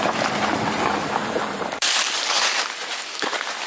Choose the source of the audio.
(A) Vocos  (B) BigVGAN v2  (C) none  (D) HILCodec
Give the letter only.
C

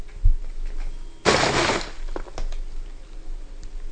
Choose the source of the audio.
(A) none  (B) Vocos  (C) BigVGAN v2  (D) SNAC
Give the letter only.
A